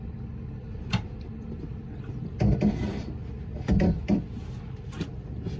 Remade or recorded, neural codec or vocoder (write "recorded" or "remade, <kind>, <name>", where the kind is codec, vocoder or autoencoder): recorded